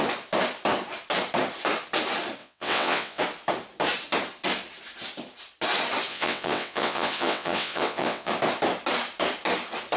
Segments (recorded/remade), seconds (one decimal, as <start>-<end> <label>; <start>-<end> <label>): 0.0-2.4 recorded; 2.4-3.2 remade; 3.2-6.1 recorded; 6.1-8.3 remade; 8.3-10.0 recorded